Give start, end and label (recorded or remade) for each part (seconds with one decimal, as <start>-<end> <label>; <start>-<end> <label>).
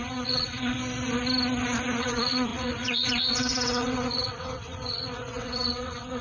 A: 0.0-0.8 remade; 0.8-2.0 recorded; 2.0-6.2 remade